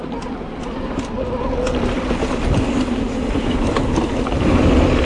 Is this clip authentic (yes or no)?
yes